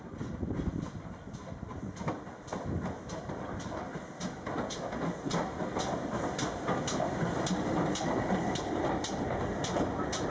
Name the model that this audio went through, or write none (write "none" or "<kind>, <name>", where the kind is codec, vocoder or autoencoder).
none